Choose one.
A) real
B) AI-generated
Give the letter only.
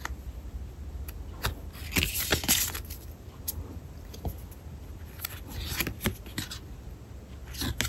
A